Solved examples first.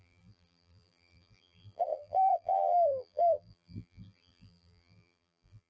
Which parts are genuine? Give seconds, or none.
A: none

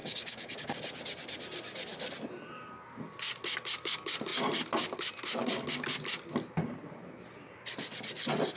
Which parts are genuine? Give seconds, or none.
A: 0.8-8.6

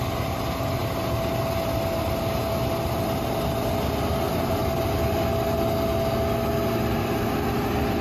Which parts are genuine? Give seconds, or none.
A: 0.0-8.0

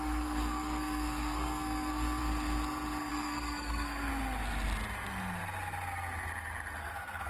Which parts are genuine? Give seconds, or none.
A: 2.2-3.1; 4.1-6.8